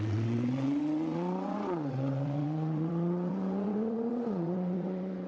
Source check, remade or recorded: remade